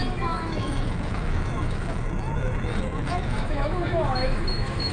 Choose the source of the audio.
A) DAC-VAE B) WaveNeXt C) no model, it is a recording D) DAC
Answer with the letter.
A